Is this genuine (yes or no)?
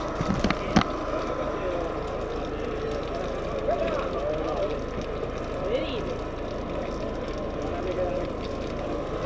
yes